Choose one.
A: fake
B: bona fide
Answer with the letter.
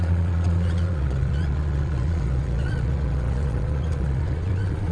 A